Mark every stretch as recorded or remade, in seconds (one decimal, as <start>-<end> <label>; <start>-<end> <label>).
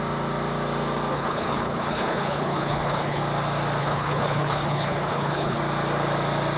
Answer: 0.0-1.1 recorded; 1.1-3.2 remade; 3.2-3.8 recorded; 3.8-5.6 remade; 5.6-6.6 recorded